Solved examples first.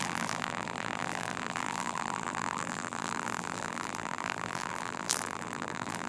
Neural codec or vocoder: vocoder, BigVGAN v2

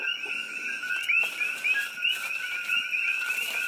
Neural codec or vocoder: none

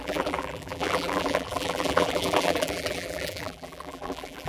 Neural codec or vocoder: vocoder, BigVGAN v2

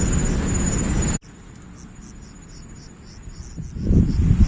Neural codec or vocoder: none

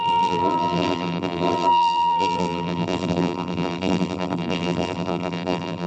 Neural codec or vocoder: vocoder, BigVGAN v2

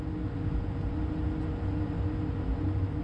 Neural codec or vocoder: none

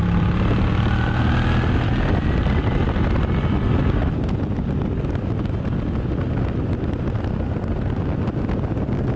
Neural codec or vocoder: none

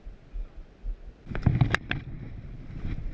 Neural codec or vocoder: none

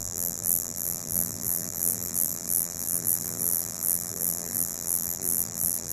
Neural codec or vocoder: vocoder, BigVGAN v2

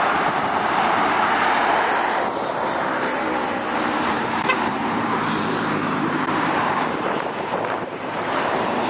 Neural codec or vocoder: vocoder, BigVGAN v2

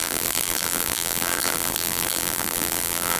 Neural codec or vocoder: vocoder, BigVGAN v2